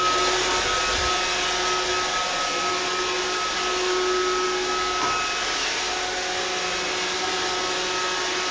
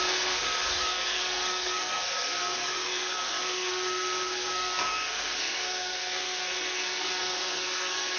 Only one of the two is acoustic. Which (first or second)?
first